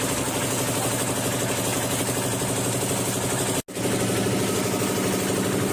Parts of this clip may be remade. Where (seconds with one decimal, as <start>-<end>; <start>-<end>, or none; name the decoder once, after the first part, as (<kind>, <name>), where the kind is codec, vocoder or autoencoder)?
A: none